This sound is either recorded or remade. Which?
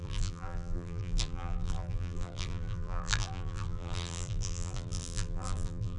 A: remade